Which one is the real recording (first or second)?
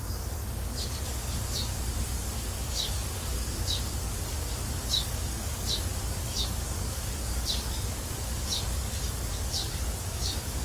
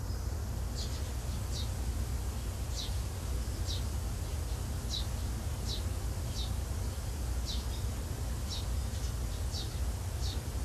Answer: second